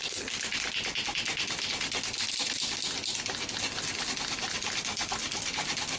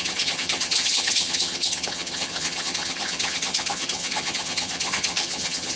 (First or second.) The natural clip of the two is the first